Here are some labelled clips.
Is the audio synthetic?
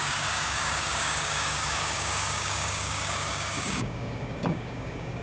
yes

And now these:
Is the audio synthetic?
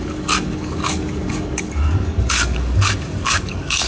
yes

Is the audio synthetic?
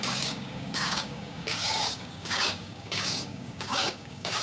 yes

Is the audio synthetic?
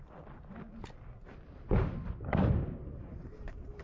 no